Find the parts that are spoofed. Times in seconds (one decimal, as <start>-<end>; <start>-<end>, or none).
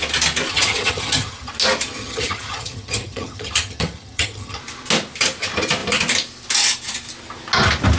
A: 0.5-1.5; 2.0-4.6